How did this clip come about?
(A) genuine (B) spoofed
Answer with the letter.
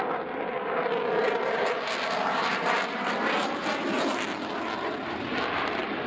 B